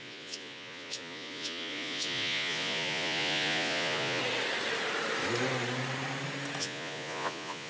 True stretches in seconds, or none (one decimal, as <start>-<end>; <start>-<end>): 4.2-6.6